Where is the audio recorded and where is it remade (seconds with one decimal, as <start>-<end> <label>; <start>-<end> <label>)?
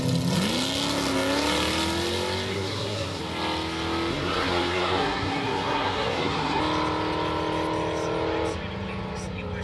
0.0-2.5 recorded; 2.5-3.2 remade; 3.2-4.1 recorded; 4.1-6.6 remade; 6.6-9.6 recorded